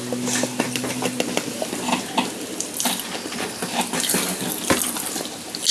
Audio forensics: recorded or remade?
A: recorded